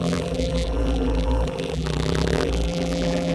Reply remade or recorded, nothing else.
remade